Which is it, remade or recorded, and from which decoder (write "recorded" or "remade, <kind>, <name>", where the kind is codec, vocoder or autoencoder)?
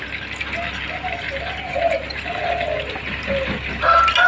recorded